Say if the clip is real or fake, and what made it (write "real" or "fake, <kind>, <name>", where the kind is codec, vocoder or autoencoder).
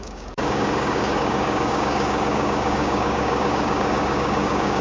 fake, codec, DAC